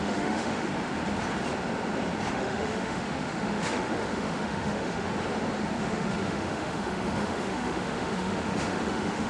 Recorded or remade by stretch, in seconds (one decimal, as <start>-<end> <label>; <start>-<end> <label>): 0.0-0.7 remade; 0.7-2.3 recorded; 2.3-5.1 remade; 5.1-5.8 recorded; 5.8-9.3 remade